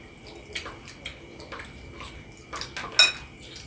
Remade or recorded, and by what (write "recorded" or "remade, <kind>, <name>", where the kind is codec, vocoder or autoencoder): recorded